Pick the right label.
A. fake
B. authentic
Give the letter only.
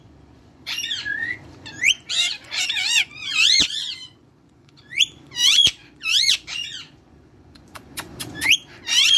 A